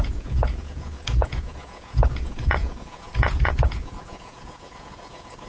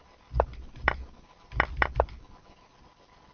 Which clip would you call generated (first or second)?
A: first